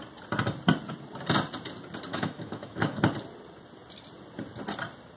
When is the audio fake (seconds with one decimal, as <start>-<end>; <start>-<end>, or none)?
2.1-3.0